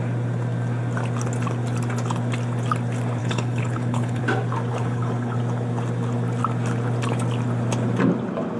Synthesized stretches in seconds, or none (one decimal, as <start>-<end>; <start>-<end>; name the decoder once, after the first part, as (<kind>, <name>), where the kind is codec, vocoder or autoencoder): 3.2-4.2 (codec, HILCodec); 4.7-5.4